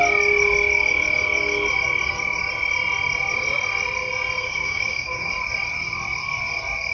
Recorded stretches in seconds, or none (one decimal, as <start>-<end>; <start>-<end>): 0.0-4.4; 5.3-6.9